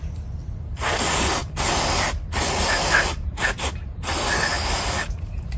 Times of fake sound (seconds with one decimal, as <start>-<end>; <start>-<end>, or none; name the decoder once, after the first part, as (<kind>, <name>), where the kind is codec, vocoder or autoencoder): none

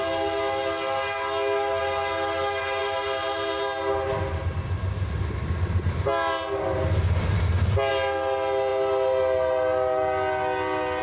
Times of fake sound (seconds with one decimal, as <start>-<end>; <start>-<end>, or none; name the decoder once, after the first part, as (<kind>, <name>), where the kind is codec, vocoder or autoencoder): none